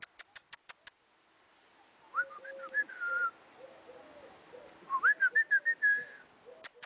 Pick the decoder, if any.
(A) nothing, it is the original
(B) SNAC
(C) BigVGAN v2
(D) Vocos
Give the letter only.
A